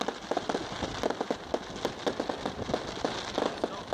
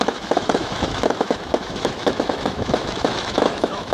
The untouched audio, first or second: first